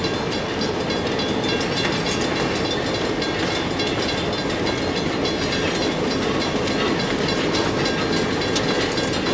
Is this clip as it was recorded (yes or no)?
yes